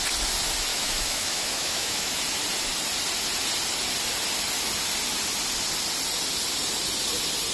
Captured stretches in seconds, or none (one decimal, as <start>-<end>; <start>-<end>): 0.0-0.7; 2.2-7.5